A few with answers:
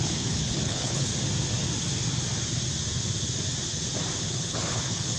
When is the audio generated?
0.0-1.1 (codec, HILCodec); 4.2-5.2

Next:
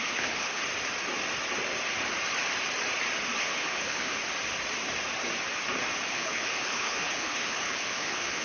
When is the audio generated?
0.0-0.6 (codec, HILCodec); 3.4-4.2; 6.1-8.4

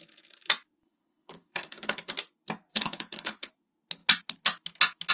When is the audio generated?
0.8-2.1 (codec, HILCodec); 2.7-3.5

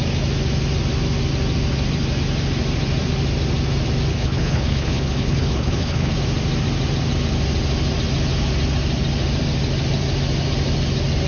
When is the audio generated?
4.1-6.2 (codec, HILCodec)